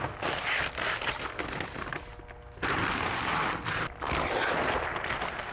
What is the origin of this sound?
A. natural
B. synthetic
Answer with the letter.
A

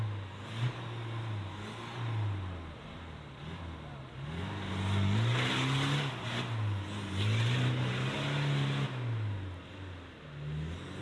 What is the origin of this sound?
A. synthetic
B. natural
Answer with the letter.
B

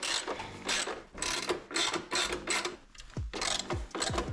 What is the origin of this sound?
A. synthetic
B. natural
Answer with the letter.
B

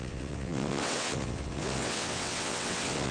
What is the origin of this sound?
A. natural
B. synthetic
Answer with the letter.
B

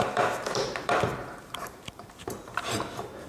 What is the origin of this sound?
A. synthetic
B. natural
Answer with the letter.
A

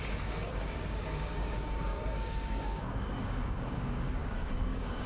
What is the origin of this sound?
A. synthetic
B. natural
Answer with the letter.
A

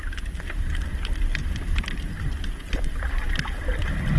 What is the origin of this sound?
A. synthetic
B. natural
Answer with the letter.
B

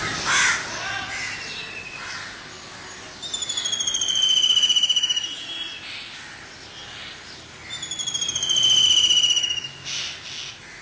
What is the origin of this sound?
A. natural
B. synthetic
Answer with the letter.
A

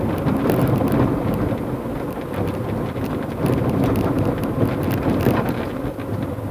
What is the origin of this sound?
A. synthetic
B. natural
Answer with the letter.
B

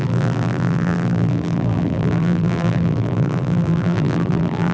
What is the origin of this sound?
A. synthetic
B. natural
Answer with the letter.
A